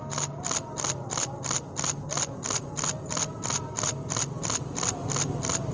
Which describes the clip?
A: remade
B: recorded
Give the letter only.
B